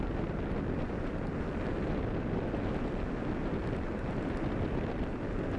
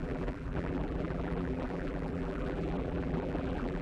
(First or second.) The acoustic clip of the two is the first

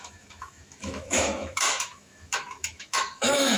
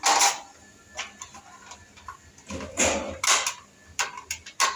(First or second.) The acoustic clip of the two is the second